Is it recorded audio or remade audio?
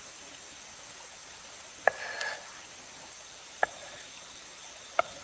recorded